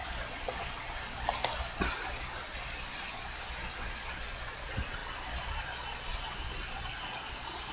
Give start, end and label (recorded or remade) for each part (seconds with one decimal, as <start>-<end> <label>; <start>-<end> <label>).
0.0-7.7 recorded